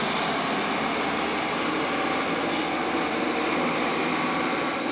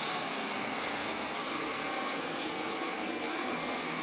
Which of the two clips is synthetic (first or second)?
second